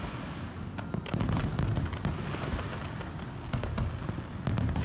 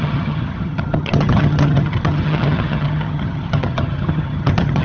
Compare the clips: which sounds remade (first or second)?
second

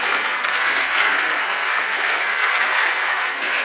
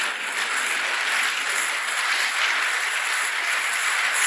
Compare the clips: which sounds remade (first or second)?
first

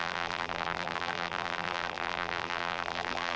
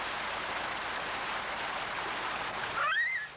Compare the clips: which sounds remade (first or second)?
first